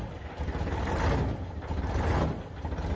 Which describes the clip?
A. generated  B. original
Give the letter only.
B